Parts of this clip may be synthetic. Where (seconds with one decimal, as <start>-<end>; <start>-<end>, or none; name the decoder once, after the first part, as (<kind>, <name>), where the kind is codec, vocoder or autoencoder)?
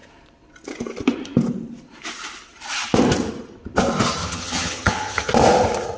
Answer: 4.2-5.3 (vocoder, HiFi-GAN)